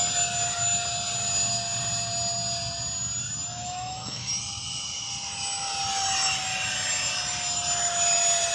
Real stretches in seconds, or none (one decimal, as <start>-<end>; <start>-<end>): 0.0-3.5; 4.3-8.5